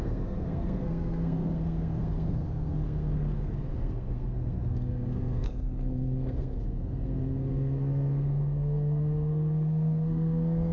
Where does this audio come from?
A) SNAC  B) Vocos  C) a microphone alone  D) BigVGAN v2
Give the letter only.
A